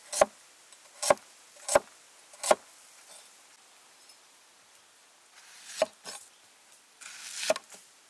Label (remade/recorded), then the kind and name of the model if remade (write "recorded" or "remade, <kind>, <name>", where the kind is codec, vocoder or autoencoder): recorded